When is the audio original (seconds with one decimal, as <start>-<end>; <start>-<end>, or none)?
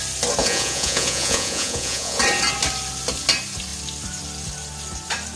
0.0-0.4; 2.2-5.4